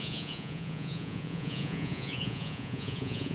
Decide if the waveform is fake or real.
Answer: fake